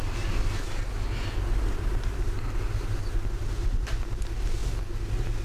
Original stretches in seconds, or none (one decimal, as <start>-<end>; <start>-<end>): 0.0-5.4